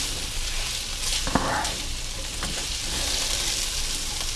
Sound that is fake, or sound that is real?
real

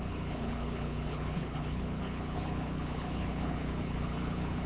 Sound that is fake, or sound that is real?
fake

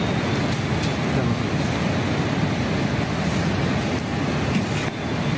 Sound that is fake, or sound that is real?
real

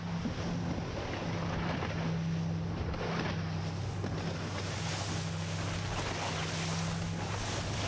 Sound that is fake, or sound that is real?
real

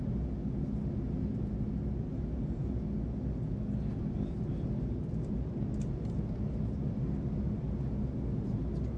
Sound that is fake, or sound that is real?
real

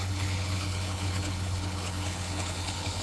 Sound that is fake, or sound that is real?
fake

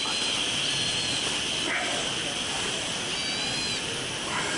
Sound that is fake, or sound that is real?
real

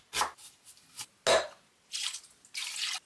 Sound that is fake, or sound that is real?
real